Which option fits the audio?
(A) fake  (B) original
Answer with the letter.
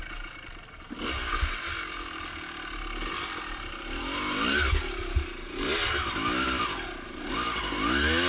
B